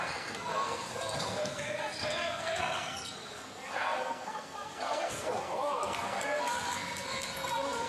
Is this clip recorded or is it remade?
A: remade